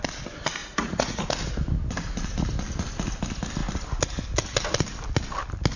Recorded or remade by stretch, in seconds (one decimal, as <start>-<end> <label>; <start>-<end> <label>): 0.0-0.6 recorded; 0.6-1.3 remade; 1.3-5.8 recorded

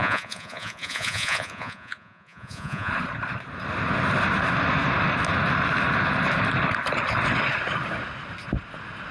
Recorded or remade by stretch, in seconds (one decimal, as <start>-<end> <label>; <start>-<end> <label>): 0.0-2.9 remade; 2.9-9.1 recorded